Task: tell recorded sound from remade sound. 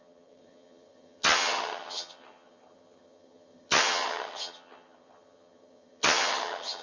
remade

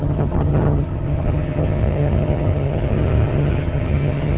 remade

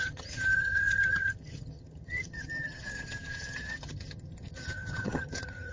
remade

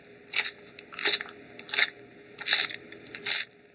recorded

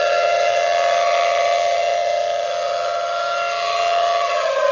remade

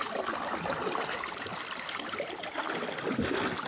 recorded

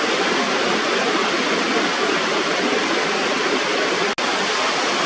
recorded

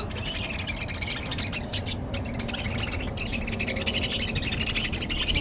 recorded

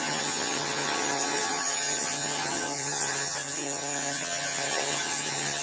remade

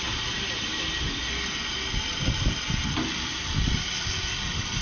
recorded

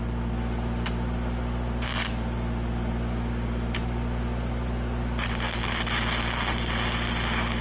recorded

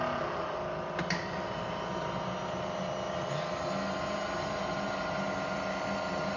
recorded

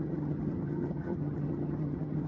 remade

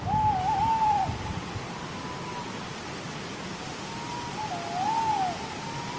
recorded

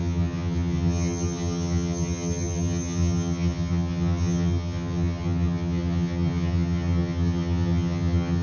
remade